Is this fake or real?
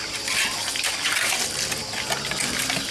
real